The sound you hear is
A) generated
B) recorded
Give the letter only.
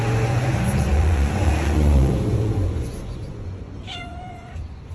A